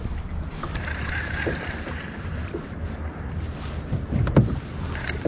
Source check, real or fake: real